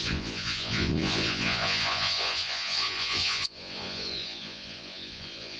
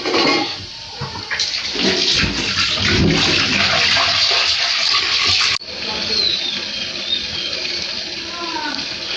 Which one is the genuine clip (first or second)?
second